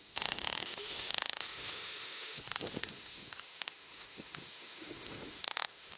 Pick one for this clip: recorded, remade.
remade